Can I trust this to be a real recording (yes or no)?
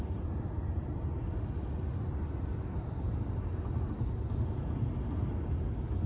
yes